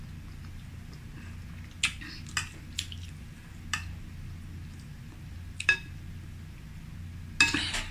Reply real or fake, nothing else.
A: real